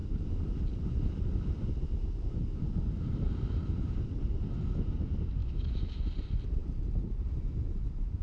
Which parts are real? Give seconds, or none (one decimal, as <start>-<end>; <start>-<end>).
0.0-5.4; 6.0-8.2

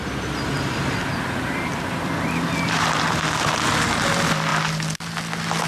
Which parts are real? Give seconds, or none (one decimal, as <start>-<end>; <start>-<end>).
0.0-1.4; 4.5-5.7

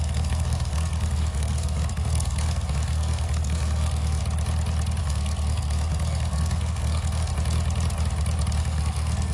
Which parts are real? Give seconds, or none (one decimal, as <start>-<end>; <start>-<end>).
4.2-5.0; 7.3-8.6

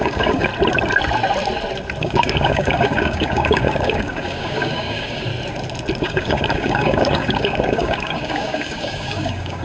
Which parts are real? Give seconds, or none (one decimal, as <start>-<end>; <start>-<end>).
0.5-2.0; 5.3-6.0

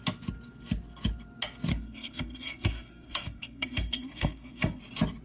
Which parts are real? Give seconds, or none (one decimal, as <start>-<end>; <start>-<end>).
0.0-1.7; 4.8-5.2

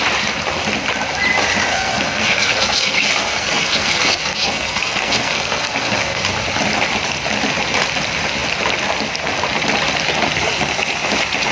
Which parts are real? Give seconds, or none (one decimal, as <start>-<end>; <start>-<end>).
0.0-1.7; 6.2-11.5